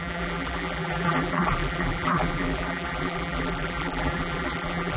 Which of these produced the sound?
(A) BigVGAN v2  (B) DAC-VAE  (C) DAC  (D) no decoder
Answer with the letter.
A